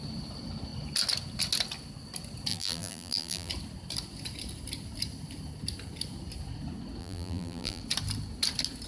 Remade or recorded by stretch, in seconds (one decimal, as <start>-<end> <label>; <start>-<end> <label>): 0.0-2.5 recorded; 2.5-3.5 remade; 3.5-7.0 recorded; 7.0-7.8 remade; 7.8-8.9 recorded